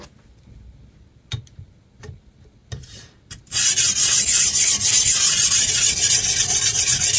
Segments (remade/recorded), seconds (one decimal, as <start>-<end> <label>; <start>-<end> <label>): 0.0-7.2 recorded